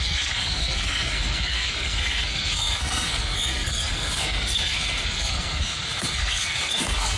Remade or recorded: remade